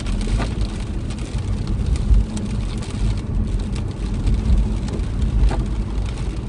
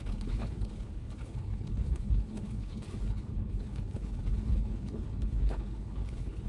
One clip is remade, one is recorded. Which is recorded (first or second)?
first